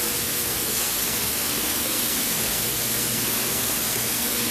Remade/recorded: remade